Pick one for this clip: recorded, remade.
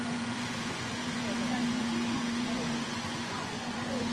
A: remade